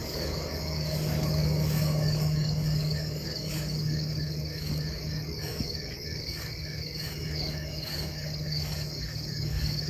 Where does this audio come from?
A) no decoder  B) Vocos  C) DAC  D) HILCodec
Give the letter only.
C